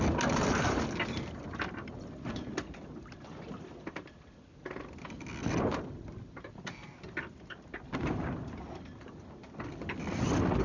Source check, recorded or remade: recorded